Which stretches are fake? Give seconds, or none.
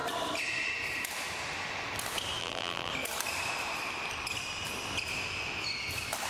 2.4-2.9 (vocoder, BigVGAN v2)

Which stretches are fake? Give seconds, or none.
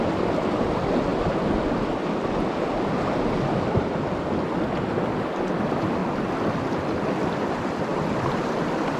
7.9-8.6 (vocoder, BigVGAN v2)